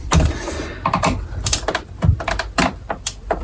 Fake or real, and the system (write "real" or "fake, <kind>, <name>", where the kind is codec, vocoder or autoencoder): fake, vocoder, BigVGAN v2